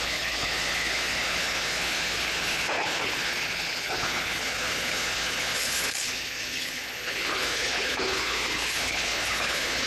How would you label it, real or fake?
fake